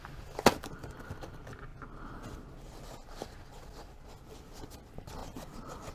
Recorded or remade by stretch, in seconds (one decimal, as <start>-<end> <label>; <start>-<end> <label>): 0.0-5.9 recorded